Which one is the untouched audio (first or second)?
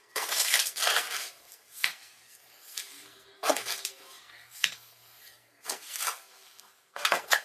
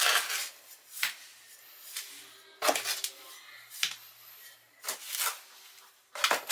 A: second